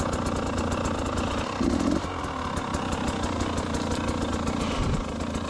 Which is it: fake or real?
real